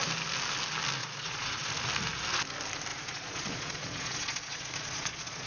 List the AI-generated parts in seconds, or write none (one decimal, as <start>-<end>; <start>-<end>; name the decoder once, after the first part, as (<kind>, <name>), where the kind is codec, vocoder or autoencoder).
1.0-1.7 (vocoder, Vocos); 2.9-5.5